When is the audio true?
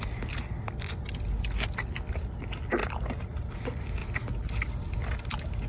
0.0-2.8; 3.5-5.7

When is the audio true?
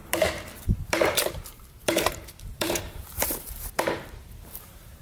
none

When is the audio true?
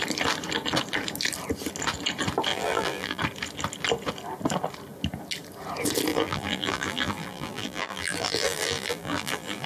0.0-2.5; 3.2-6.1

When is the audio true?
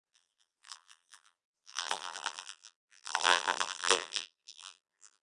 none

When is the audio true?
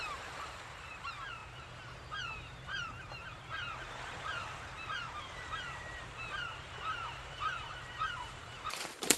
none